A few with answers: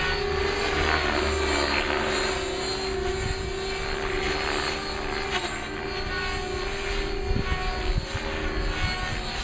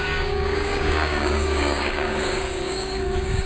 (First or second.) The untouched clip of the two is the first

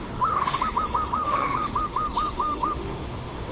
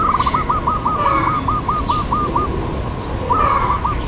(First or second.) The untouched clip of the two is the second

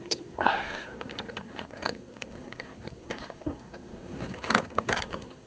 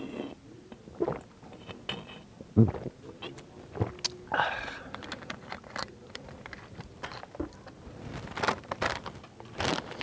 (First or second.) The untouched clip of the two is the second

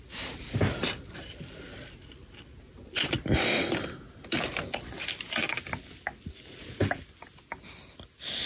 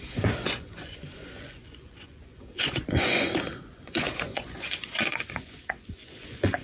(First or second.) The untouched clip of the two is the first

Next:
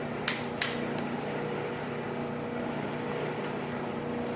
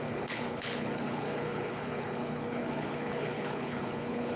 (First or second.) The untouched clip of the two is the first